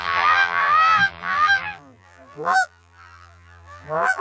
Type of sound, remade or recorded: remade